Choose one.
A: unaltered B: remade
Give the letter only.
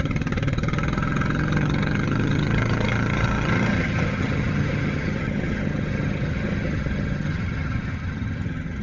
B